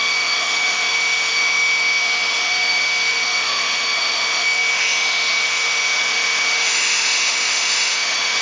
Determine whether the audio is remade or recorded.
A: remade